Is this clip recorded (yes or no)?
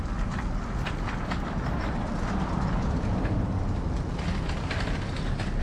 yes